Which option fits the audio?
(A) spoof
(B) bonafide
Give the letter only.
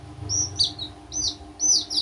B